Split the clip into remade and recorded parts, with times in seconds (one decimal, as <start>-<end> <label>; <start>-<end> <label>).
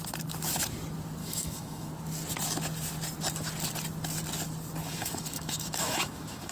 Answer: 0.0-1.2 recorded; 1.2-1.9 remade; 1.9-4.8 recorded; 4.8-6.5 remade